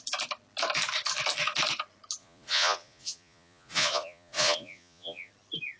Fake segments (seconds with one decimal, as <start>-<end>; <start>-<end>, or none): 2.2-5.3